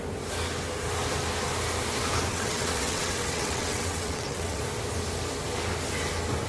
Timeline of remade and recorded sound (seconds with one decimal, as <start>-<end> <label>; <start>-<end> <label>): 0.0-2.3 recorded; 2.3-4.6 remade; 4.6-6.5 recorded